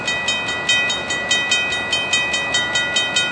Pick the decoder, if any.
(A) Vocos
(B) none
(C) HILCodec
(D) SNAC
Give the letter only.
B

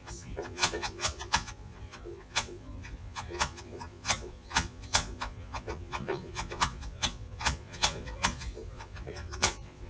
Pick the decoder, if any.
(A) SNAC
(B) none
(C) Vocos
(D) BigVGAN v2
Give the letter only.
C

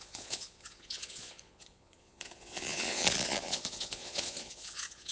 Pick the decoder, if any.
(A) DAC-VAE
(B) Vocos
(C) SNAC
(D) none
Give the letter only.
B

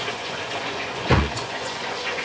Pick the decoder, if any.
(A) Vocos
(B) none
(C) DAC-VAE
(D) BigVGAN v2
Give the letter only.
A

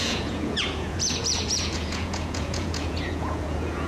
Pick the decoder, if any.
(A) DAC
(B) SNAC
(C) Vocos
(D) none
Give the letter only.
C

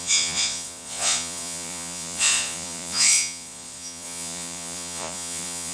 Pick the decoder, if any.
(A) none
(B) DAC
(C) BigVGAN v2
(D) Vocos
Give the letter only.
D